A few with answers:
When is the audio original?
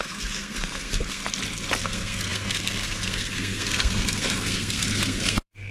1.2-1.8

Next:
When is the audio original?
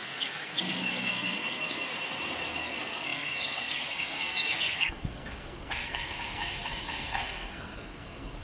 1.9-2.4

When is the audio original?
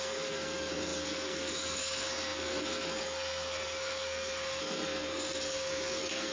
none